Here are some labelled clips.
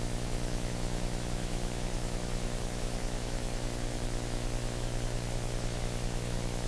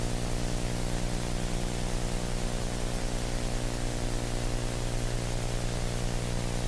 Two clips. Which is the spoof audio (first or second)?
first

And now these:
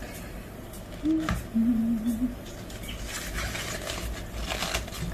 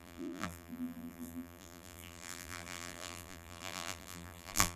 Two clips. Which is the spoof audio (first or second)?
second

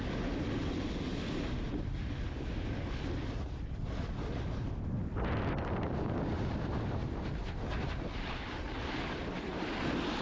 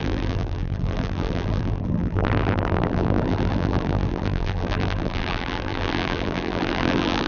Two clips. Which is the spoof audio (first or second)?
second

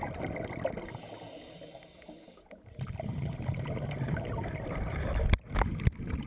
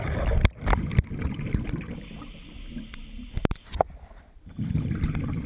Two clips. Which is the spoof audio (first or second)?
second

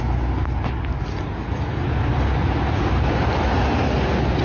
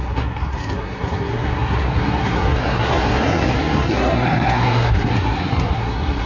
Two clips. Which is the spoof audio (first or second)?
second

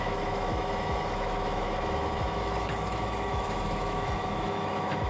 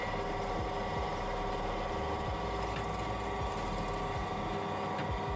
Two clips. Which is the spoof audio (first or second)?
first